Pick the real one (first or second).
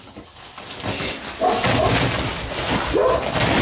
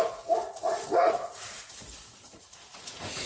first